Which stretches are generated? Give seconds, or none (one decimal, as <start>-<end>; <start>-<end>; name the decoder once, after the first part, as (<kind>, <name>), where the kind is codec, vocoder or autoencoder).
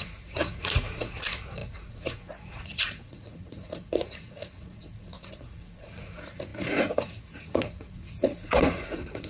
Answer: 0.0-9.3 (vocoder, Vocos)